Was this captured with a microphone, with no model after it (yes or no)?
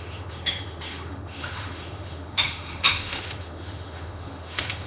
no